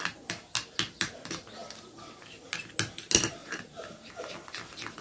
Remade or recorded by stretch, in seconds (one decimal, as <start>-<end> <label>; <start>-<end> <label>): 0.0-3.4 recorded; 3.4-4.1 remade; 4.1-5.0 recorded